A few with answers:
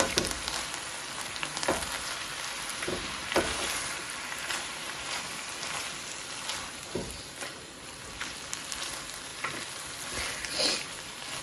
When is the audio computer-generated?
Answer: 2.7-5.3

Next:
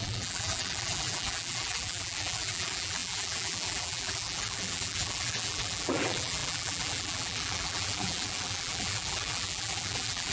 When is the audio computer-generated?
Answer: 0.0-10.3

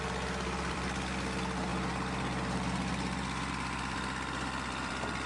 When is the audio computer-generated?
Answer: 0.0-5.3

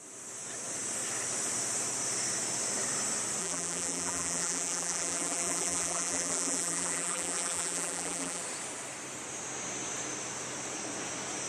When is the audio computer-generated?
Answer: 3.4-8.4

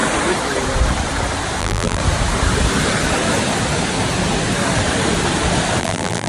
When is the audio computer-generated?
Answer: 1.6-2.0; 5.8-6.3

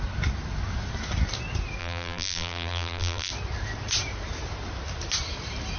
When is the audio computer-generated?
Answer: 1.8-3.3

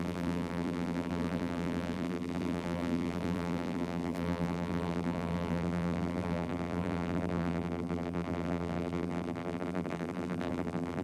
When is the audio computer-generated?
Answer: 0.0-11.0